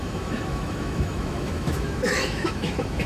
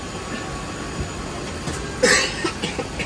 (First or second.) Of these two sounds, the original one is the second